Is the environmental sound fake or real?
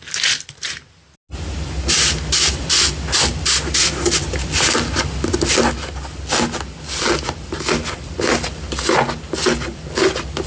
real